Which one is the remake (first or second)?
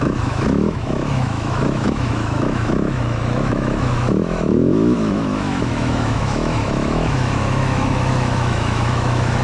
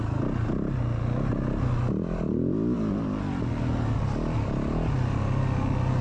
first